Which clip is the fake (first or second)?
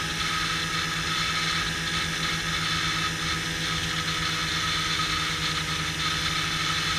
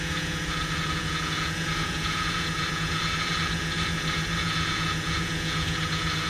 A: second